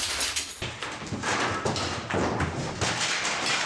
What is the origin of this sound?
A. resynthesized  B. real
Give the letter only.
B